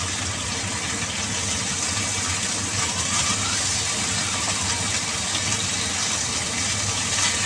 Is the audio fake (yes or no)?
no